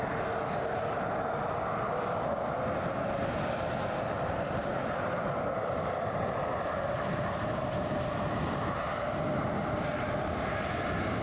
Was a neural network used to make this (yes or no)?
no